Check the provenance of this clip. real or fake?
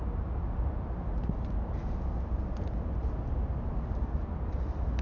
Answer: real